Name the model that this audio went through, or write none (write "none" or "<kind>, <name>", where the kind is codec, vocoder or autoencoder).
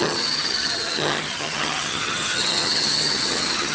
vocoder, HiFi-GAN